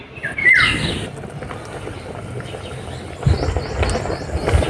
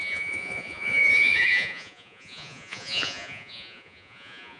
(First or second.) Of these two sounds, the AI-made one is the second